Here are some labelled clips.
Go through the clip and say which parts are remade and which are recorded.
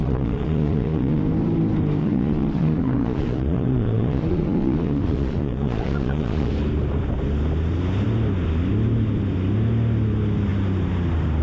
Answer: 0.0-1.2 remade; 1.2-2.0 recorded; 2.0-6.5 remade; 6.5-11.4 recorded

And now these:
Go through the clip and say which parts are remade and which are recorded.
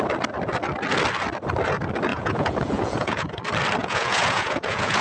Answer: 0.0-2.1 recorded; 2.1-3.4 remade; 3.4-3.8 recorded; 3.8-5.0 remade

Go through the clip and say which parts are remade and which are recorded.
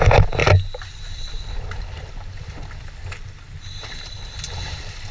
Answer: 0.0-5.1 recorded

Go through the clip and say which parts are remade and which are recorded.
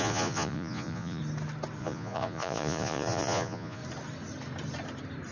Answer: 0.0-1.2 remade; 1.2-1.8 recorded; 1.8-3.8 remade; 3.8-5.3 recorded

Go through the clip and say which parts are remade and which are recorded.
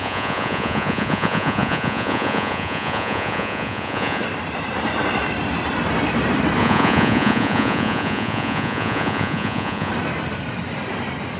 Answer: 0.0-4.2 remade; 4.2-6.6 recorded; 6.6-9.9 remade; 9.9-11.4 recorded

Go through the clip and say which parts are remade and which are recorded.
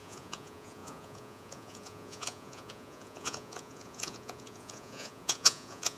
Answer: 0.0-6.0 remade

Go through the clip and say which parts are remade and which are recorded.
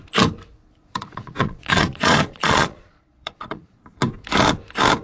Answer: 0.0-0.8 recorded; 0.8-3.8 remade; 3.8-5.0 recorded